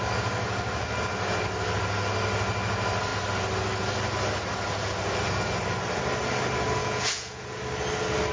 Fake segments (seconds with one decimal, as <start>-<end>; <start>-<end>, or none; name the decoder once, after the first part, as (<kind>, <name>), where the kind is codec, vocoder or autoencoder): 6.8-7.6 (vocoder, Vocos)